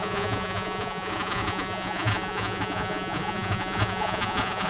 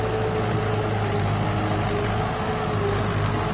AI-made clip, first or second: first